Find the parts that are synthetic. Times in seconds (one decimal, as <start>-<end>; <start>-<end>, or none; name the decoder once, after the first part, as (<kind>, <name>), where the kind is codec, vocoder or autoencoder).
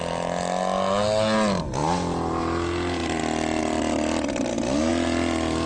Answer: none